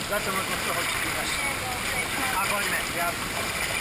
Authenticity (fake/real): real